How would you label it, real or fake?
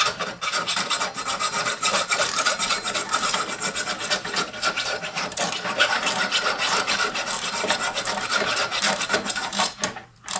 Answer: fake